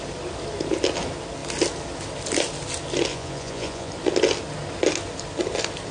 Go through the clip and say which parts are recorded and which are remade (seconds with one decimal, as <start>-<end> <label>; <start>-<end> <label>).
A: 0.0-3.1 recorded; 3.1-3.9 remade; 3.9-5.9 recorded